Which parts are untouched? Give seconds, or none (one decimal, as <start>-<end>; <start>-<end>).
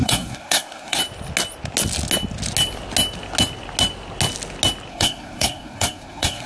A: 1.0-4.9